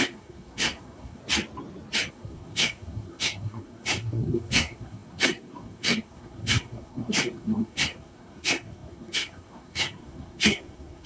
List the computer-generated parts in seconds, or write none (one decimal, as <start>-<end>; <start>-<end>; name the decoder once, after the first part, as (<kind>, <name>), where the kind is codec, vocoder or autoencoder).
0.0-1.2 (codec, SNAC); 2.1-11.1